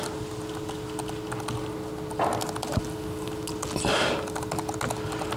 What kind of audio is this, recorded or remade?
recorded